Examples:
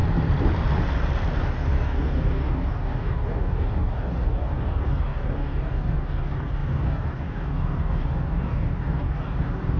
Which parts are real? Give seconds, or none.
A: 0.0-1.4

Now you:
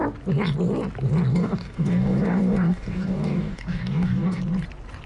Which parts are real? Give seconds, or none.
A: 0.0-1.3; 4.4-5.1

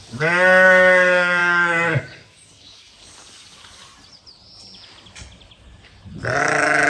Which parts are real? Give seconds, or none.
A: 3.8-6.4

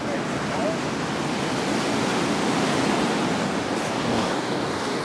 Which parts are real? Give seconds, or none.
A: 0.0-3.8

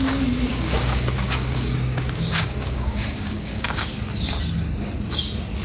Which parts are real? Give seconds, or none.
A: 0.0-0.5; 3.9-5.6

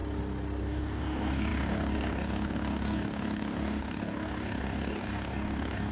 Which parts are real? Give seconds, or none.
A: 0.0-0.6

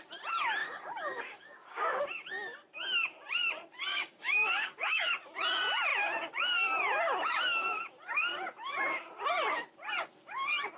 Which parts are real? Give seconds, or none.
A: 0.0-0.6; 2.0-3.9; 5.1-10.8

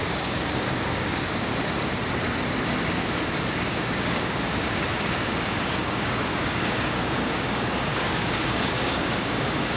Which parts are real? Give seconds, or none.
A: 1.5-3.7